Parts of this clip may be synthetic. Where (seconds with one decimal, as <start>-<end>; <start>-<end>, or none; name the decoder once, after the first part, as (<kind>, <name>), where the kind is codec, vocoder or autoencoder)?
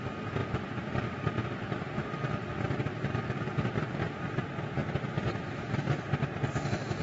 0.4-4.3 (vocoder, BigVGAN v2); 4.8-5.8